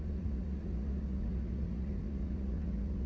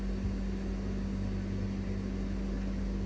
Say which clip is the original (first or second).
second